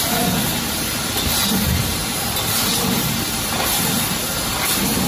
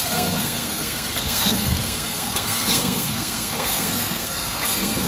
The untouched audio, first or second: first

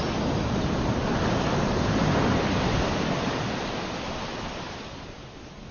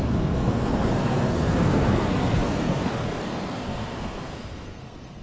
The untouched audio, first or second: first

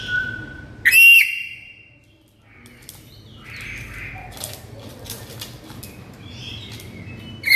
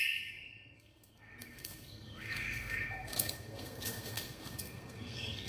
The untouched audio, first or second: first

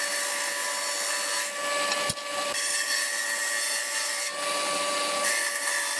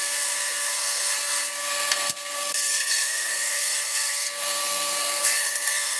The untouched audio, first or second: first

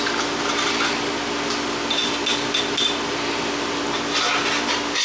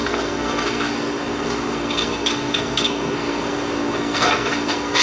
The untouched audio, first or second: first